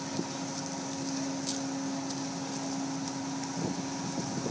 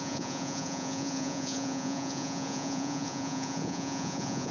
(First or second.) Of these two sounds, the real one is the first